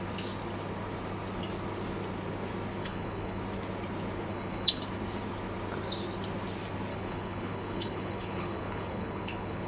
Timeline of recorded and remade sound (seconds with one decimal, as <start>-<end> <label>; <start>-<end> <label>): 0.0-2.8 recorded; 2.8-3.4 remade; 3.4-4.3 recorded; 4.3-4.8 remade; 4.8-6.9 recorded; 6.9-9.7 remade